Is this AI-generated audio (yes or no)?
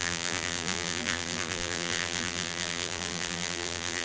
yes